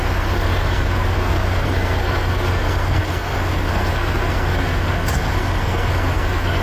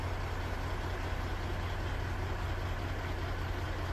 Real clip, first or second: second